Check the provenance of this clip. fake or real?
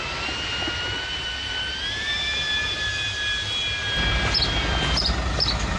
real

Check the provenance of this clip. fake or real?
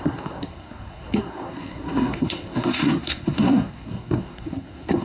fake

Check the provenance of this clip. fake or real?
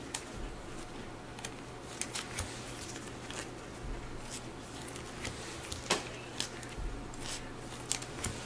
real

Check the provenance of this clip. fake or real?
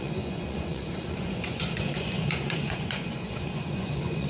fake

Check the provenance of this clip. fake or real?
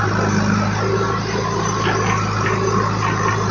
real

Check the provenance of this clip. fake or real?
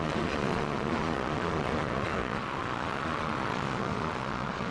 fake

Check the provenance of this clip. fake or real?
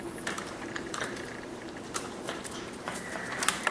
fake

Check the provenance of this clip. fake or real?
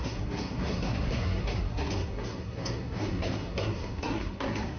fake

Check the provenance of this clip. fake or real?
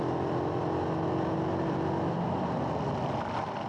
real